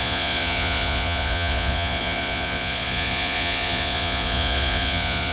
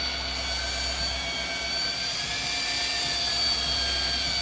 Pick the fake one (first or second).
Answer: first